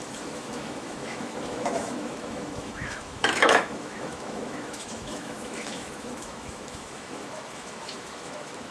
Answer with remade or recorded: remade